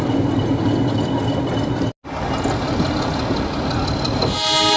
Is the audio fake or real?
real